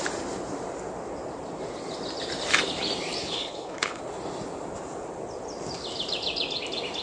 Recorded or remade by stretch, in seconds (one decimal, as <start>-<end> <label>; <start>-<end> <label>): 0.0-3.2 recorded; 3.2-4.0 remade; 4.0-7.0 recorded